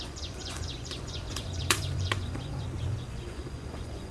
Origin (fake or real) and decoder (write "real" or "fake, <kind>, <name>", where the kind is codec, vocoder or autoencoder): fake, vocoder, Vocos